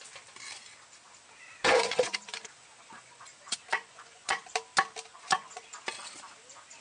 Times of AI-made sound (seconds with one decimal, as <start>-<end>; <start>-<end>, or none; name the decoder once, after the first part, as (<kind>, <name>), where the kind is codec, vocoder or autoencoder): 1.6-4.4 (vocoder, Vocos); 5.1-5.6